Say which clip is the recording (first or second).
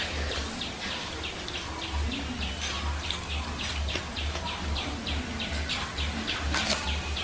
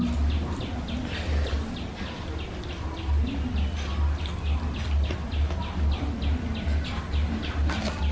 second